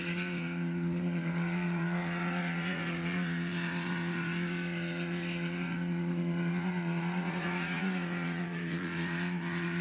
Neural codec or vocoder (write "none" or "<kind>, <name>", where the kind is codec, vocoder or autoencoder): vocoder, Vocos